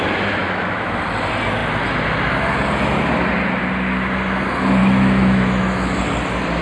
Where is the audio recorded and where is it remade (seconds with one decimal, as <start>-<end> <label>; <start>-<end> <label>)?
0.0-0.4 recorded; 0.4-1.0 remade; 1.0-4.8 recorded; 4.8-6.0 remade; 6.0-6.6 recorded